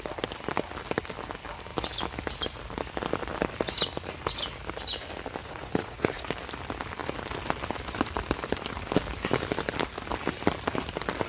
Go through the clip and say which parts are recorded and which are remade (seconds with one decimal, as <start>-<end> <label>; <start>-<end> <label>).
0.0-5.4 recorded; 5.4-6.2 remade; 6.2-11.3 recorded